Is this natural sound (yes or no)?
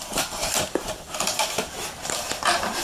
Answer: no